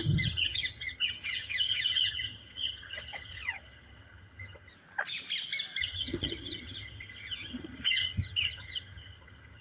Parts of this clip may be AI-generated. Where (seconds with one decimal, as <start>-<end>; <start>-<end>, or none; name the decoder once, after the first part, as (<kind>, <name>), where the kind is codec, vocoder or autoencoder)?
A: 0.0-4.7 (vocoder, HiFi-GAN); 5.8-9.6